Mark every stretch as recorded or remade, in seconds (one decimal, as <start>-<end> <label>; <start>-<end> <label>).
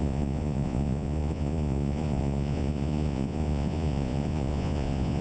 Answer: 0.0-5.2 remade